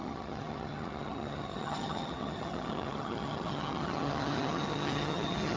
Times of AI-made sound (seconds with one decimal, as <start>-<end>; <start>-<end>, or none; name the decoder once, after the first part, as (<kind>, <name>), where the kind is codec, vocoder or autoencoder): 0.0-5.6 (vocoder, HiFi-GAN)